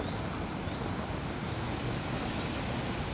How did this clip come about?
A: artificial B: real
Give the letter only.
B